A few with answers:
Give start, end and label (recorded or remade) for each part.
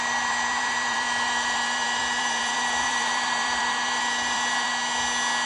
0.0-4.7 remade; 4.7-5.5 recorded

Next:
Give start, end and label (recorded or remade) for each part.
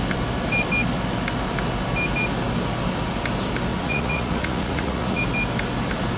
0.0-3.7 recorded; 3.7-5.2 remade; 5.2-6.2 recorded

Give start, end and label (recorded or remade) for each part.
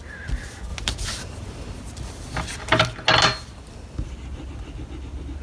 0.0-5.4 recorded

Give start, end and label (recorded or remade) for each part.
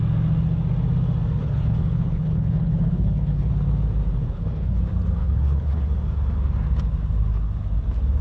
0.0-1.4 recorded; 1.4-3.5 remade; 3.5-4.2 recorded; 4.2-4.8 remade; 4.8-5.2 recorded; 5.2-5.8 remade; 5.8-8.2 recorded